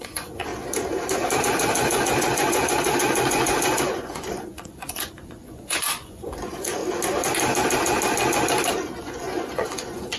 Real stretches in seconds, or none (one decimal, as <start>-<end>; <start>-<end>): 0.5-1.4; 6.8-9.0